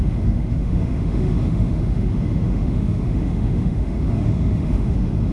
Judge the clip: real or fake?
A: fake